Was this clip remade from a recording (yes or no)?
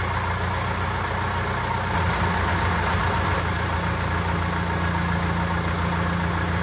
no